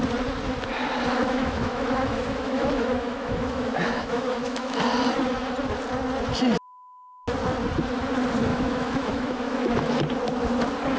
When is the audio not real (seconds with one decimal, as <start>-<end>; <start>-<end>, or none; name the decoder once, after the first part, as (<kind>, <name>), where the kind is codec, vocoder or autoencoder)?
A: 1.1-4.8 (autoencoder, DAC-VAE); 8.5-9.9